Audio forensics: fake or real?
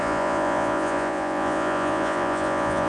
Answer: fake